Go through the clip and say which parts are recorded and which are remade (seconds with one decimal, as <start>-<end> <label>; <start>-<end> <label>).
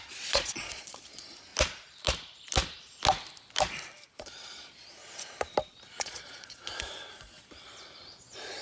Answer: 0.0-1.5 remade; 1.5-4.1 recorded; 4.1-5.0 remade; 5.0-6.0 recorded; 6.0-8.6 remade